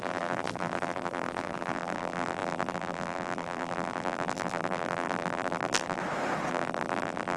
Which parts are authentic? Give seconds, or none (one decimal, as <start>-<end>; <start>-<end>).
6.0-6.5